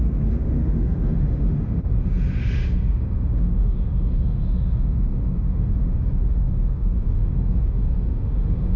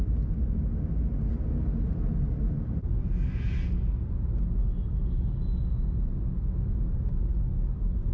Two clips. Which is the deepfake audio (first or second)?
first